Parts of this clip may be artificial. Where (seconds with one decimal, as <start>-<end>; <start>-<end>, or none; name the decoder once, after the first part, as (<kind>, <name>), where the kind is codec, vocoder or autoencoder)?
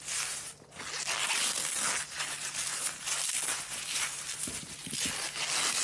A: 2.7-5.1 (vocoder, BigVGAN v2)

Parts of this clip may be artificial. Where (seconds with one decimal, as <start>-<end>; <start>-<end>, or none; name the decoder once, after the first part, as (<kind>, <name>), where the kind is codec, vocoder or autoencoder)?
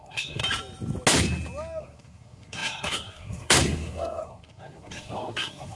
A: 0.0-0.4 (codec, SNAC); 1.8-5.8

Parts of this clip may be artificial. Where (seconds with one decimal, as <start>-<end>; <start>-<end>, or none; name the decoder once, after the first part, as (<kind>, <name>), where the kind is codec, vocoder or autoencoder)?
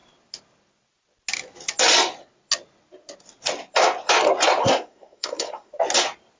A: 4.6-5.7 (codec, SNAC)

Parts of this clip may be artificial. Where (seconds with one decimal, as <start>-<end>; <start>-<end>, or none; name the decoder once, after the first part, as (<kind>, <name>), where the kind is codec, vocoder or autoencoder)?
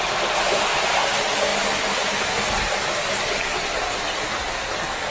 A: none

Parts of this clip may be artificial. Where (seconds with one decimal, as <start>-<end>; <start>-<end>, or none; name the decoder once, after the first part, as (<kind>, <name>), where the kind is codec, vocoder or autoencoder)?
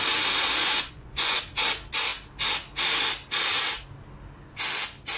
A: 0.6-1.4 (vocoder, Vocos)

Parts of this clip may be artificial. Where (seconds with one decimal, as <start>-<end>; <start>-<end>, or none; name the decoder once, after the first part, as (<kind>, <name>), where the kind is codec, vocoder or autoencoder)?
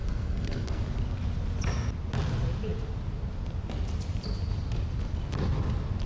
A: 0.0-0.8 (codec, SNAC)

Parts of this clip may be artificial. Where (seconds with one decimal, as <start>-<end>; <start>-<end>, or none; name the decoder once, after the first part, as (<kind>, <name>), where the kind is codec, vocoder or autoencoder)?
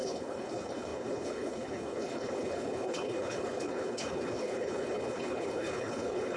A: 0.0-6.4 (codec, HILCodec)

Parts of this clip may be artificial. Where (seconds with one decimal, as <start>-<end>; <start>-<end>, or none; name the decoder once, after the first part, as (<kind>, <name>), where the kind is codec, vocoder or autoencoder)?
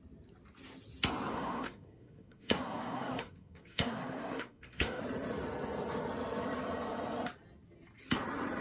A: 1.3-5.0 (codec, SNAC)